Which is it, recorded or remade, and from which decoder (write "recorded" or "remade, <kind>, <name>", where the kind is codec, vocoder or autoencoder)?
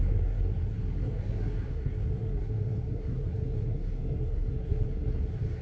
remade, codec, SNAC